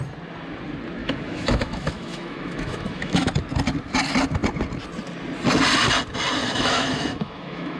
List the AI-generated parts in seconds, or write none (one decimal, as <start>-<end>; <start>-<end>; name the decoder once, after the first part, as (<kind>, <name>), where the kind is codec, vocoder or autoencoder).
1.0-3.3 (autoencoder, DAC-VAE); 6.4-7.8